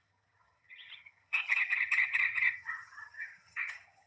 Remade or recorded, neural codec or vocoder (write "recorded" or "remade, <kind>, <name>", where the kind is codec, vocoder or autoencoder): remade, vocoder, HiFi-GAN